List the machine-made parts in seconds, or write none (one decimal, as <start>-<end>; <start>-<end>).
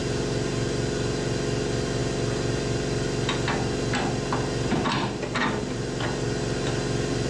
none